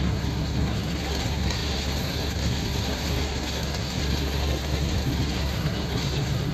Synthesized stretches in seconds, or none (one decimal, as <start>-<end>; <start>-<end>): 0.0-6.5